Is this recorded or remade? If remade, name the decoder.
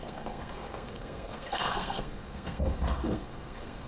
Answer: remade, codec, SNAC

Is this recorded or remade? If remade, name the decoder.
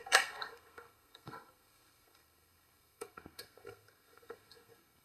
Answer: remade, codec, SNAC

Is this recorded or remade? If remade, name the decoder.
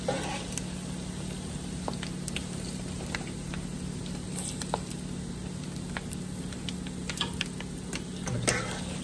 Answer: recorded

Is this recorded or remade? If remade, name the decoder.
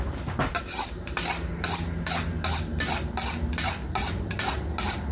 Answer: recorded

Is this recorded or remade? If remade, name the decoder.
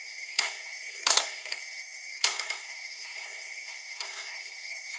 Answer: remade, codec, SNAC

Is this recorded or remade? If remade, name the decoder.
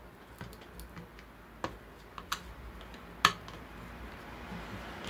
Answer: recorded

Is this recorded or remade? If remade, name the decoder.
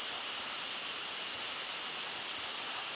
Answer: recorded